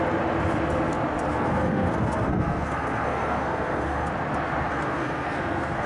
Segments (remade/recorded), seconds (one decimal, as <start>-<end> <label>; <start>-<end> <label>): 0.0-1.3 recorded; 1.3-4.1 remade; 4.1-4.7 recorded; 4.7-5.9 remade

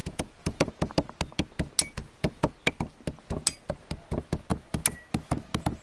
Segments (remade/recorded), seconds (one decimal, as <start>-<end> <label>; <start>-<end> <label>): 0.0-0.7 remade; 0.7-2.0 recorded; 2.0-2.5 remade; 2.5-5.8 recorded

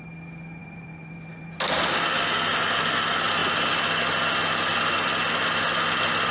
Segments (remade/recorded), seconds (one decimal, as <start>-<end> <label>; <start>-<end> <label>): 0.0-0.6 recorded; 0.6-1.4 remade; 1.4-6.3 recorded

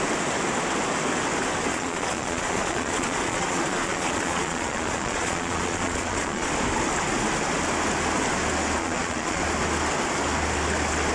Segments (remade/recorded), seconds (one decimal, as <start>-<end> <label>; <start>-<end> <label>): 0.0-1.7 recorded; 1.7-6.5 remade; 6.5-8.8 recorded; 8.8-9.4 remade; 9.4-11.1 recorded

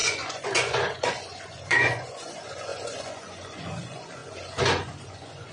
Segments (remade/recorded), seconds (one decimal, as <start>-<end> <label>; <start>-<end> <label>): 0.0-5.5 remade

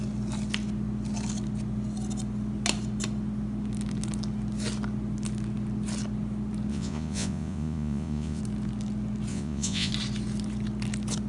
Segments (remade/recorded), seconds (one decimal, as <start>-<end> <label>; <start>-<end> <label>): 0.0-6.7 recorded; 6.7-8.4 remade; 8.4-9.3 recorded; 9.3-9.9 remade; 9.9-11.3 recorded

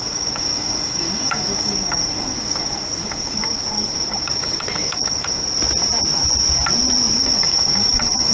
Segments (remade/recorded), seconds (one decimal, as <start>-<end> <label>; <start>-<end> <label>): 0.0-5.4 remade; 5.4-7.2 recorded; 7.2-8.3 remade

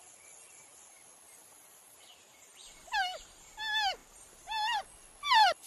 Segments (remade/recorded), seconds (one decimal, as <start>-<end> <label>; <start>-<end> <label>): 0.0-1.8 recorded; 1.8-3.4 remade; 3.4-4.0 recorded; 4.0-4.8 remade; 4.8-5.7 recorded